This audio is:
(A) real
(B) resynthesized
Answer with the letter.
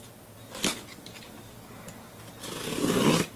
A